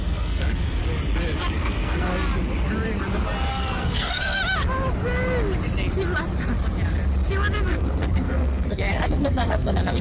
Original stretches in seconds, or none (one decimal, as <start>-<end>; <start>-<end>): 0.8-1.6; 2.1-3.5; 4.4-7.7